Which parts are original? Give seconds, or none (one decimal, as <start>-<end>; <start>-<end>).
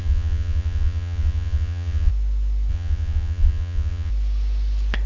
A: 2.1-2.7; 4.1-5.1